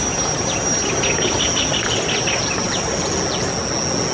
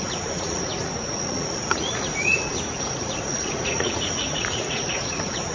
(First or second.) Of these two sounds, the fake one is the second